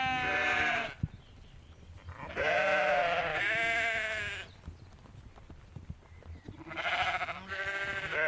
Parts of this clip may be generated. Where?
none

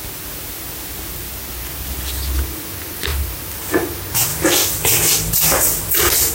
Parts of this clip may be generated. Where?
3.1-3.7

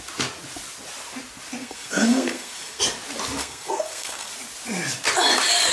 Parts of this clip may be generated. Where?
1.6-2.8; 3.4-4.3

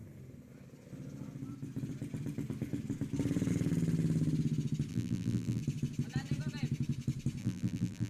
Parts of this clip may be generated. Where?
4.9-5.6; 7.4-8.1

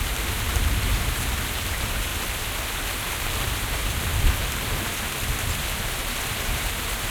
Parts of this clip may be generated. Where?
0.0-2.1; 3.5-4.1; 6.2-7.1